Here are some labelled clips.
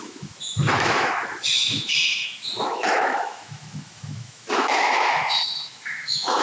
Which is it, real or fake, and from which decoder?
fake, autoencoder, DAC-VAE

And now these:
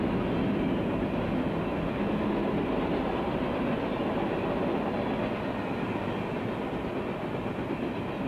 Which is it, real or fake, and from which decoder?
real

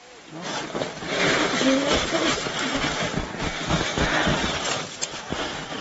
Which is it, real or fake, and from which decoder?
real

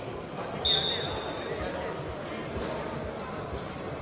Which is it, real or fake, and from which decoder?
real